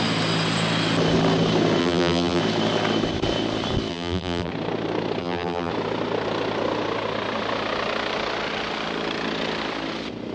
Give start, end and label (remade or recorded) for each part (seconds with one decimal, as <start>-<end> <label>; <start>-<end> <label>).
0.0-1.8 recorded; 1.8-2.4 remade; 2.4-3.9 recorded; 3.9-4.5 remade; 4.5-5.2 recorded; 5.2-5.7 remade; 5.7-10.3 recorded